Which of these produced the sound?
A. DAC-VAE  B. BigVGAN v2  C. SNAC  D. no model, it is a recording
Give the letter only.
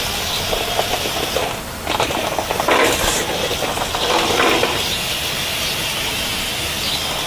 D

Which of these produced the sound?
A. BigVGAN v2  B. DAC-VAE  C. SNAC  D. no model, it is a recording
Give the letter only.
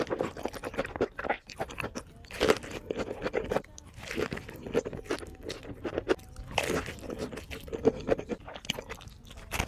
D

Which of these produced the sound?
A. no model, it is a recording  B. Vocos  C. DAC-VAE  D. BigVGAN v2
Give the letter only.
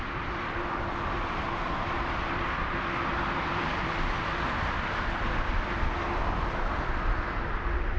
D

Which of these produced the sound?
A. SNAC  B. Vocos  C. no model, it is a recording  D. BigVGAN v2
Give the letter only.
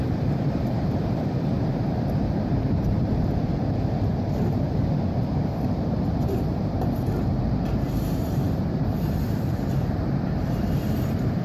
D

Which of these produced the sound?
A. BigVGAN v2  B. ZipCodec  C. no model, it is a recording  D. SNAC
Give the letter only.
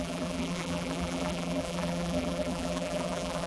A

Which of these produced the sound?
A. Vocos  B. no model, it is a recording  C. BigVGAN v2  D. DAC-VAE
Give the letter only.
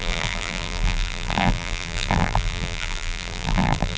C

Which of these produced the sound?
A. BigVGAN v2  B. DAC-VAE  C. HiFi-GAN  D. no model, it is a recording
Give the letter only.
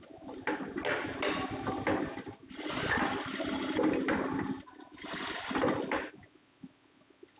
D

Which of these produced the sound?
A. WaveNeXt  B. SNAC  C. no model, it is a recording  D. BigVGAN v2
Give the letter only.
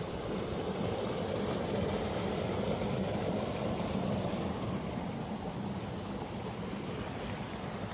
C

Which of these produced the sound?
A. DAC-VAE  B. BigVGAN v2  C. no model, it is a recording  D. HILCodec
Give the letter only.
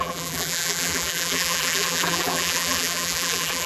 B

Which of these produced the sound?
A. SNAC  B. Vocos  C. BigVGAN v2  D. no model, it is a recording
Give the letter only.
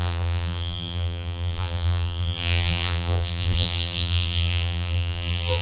C